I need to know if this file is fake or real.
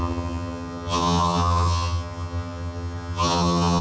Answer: fake